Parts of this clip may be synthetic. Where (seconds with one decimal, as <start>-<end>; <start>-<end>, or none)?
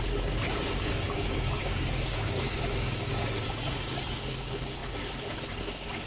0.5-4.2